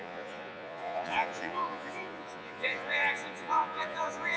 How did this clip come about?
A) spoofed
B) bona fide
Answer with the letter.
A